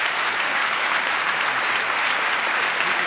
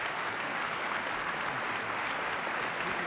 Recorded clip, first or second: second